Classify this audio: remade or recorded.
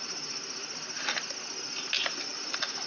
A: recorded